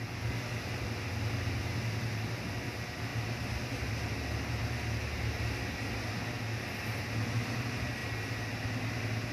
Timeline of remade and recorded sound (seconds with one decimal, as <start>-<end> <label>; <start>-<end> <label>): 0.0-9.3 recorded